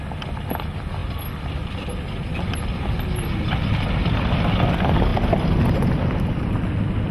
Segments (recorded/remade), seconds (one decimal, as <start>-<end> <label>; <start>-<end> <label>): 0.0-7.1 recorded